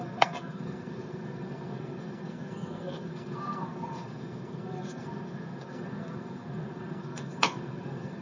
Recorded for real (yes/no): no